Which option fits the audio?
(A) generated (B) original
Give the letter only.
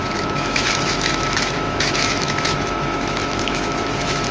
A